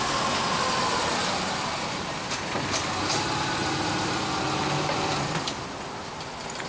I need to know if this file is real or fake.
real